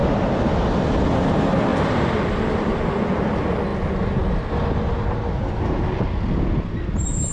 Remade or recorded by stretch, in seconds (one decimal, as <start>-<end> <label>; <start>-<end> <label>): 0.0-1.7 recorded; 1.7-2.8 remade; 2.8-7.3 recorded